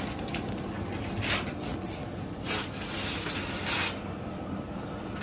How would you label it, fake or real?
real